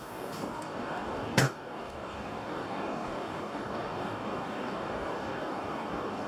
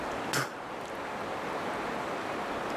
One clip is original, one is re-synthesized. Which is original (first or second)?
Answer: second